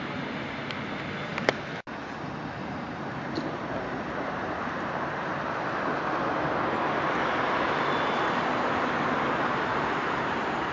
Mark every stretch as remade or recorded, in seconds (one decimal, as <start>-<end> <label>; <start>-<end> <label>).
0.0-2.6 recorded; 2.6-6.4 remade; 6.4-9.7 recorded; 9.7-10.7 remade